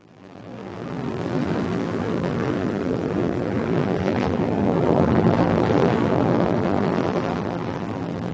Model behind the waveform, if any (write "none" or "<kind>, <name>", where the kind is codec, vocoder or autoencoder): vocoder, BigVGAN v2